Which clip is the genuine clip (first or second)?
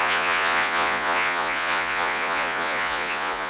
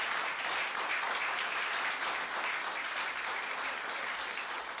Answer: second